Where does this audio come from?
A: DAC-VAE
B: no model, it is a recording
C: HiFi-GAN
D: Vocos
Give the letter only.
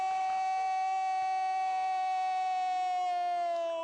B